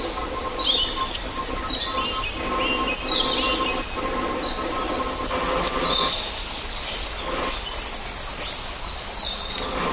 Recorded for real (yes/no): yes